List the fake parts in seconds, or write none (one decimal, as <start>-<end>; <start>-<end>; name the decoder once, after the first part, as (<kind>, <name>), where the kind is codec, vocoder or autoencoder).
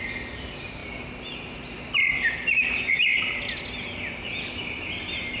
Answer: none